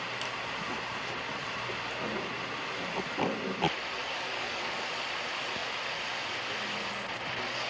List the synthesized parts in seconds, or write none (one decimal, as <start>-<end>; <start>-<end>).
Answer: 4.0-4.9